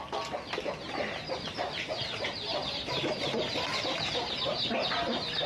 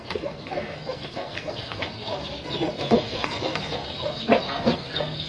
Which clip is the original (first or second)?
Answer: first